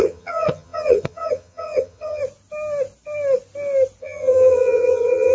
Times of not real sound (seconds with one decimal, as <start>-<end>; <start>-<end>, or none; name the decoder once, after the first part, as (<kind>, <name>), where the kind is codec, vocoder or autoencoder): 0.0-2.2 (vocoder, HiFi-GAN); 4.0-5.3